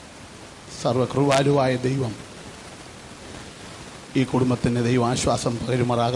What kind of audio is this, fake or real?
real